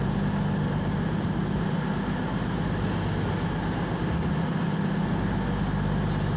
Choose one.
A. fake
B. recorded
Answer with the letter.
B